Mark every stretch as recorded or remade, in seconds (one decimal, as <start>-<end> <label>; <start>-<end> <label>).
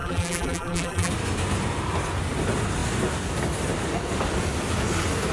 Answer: 0.0-1.1 remade; 1.1-5.3 recorded